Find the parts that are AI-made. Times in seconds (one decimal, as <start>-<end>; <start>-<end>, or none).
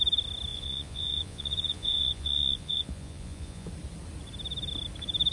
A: 0.5-3.7